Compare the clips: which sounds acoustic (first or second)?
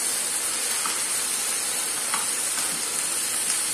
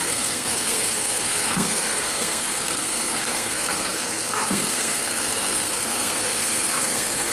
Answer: first